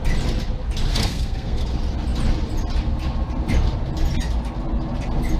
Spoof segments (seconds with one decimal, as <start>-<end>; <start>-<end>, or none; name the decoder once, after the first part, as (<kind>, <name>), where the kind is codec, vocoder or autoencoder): 0.9-1.7 (codec, SNAC)